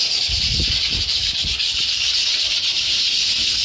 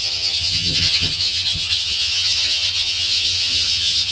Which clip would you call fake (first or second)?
second